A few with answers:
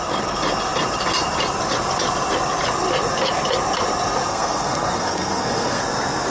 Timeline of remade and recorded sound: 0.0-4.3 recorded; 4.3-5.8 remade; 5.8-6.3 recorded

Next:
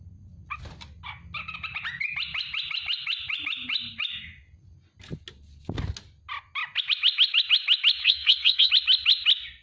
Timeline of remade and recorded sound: 0.0-8.0 recorded; 8.0-8.7 remade; 8.7-9.6 recorded

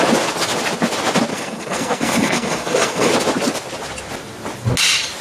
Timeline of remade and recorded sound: 0.0-1.3 recorded; 1.3-3.1 remade; 3.1-5.2 recorded

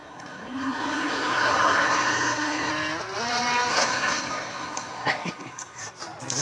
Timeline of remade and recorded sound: 0.0-2.7 remade; 2.7-3.7 recorded; 3.7-5.8 remade; 5.8-6.4 recorded

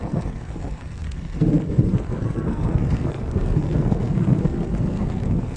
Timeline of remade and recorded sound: 0.0-5.6 remade

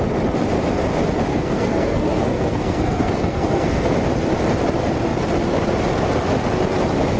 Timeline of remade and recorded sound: 0.0-1.3 recorded; 1.3-3.9 remade; 3.9-7.2 recorded

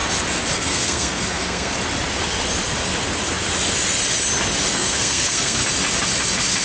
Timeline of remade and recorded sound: 0.0-0.5 recorded; 0.5-1.7 remade; 1.7-4.7 recorded; 4.7-5.6 remade; 5.6-6.6 recorded